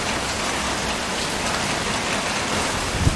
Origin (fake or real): fake